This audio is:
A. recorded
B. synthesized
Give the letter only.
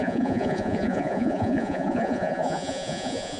B